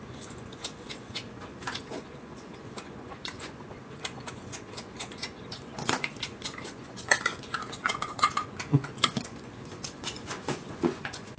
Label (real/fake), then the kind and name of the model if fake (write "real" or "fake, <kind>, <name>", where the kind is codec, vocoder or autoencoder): fake, vocoder, Vocos